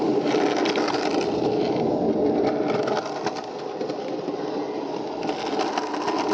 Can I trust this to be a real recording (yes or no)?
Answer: yes